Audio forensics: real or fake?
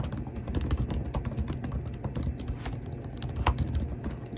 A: real